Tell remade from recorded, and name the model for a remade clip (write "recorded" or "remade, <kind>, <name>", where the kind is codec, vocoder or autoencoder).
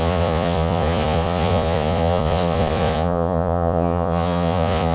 remade, vocoder, Vocos